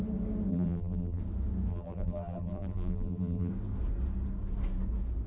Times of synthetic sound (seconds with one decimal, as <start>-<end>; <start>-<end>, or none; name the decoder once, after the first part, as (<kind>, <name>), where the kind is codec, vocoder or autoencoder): 0.5-1.2 (vocoder, BigVGAN v2); 1.7-3.5